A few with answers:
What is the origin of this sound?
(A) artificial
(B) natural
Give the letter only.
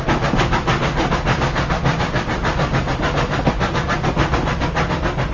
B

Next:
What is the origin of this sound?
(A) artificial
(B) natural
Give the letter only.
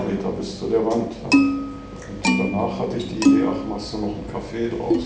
B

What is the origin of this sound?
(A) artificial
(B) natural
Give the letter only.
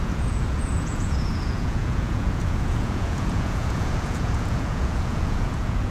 A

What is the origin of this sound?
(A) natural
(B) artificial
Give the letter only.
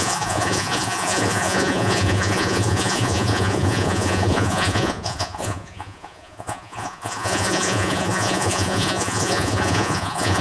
B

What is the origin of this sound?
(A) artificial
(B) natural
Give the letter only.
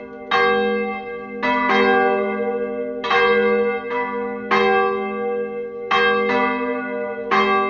B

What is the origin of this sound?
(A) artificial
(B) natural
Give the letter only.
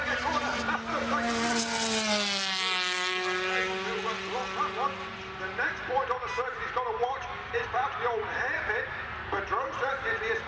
B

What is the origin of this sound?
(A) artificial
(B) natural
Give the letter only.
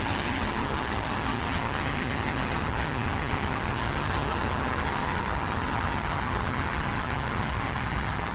A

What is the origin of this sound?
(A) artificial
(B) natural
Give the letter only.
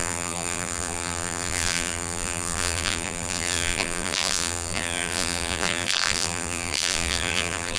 A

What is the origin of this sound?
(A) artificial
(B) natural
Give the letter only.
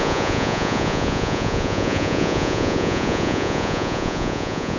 A